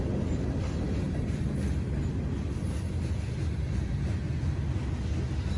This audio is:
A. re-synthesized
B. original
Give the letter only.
B